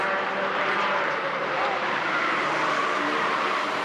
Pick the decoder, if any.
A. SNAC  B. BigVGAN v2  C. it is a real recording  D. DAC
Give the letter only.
B